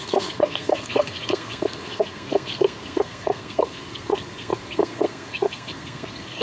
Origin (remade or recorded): remade